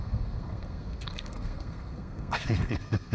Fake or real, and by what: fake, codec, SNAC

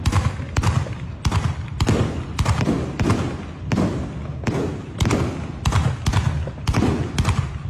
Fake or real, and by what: real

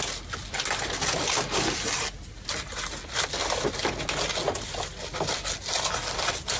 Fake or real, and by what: real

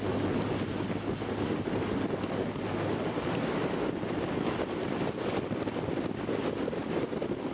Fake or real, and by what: real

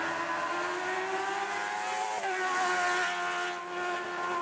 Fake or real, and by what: real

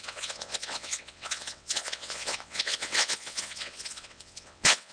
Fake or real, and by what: fake, vocoder, WaveNeXt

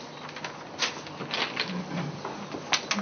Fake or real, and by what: real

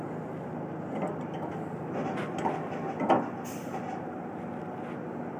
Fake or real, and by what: real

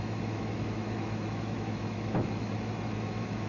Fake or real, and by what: fake, autoencoder, DAC-VAE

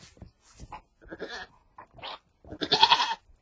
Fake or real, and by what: real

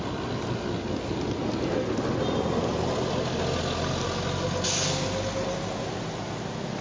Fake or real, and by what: real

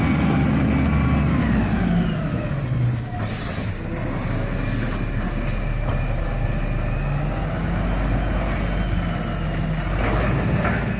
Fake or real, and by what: real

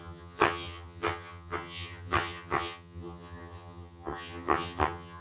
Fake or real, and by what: fake, vocoder, HiFi-GAN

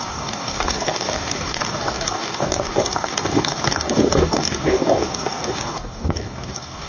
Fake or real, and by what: fake, codec, DAC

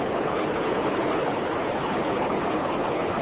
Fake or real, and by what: fake, codec, HILCodec